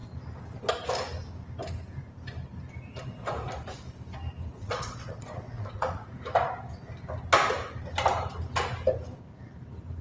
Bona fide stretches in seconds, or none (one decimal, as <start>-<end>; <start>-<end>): 0.0-4.5; 6.1-10.0